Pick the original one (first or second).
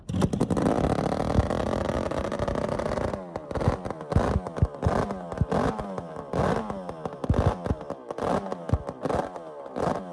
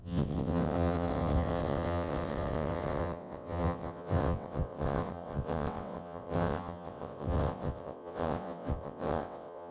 first